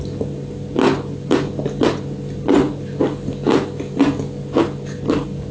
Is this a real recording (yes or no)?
yes